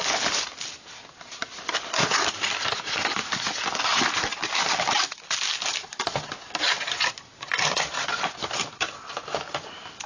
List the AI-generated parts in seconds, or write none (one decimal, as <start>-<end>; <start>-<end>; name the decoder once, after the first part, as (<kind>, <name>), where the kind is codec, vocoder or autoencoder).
none